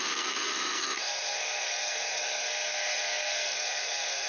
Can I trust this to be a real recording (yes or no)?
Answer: no